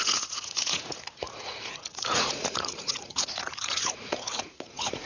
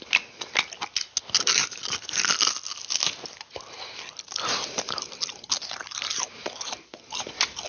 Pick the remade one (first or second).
first